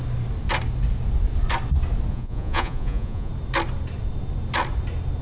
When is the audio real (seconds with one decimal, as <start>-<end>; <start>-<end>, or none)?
0.0-2.1; 3.3-5.2